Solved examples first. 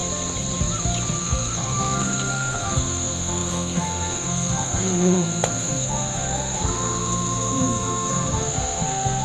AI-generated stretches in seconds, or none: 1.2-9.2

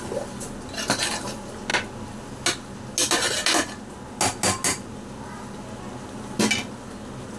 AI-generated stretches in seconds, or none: none

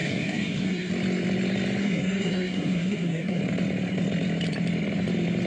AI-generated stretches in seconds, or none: 0.0-0.9; 1.8-3.4

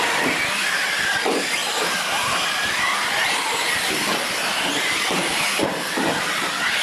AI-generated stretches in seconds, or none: none